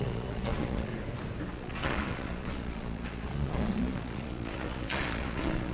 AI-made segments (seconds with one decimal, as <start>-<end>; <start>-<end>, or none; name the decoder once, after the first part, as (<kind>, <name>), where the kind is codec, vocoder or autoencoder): 0.0-0.9 (vocoder, Vocos); 1.5-5.7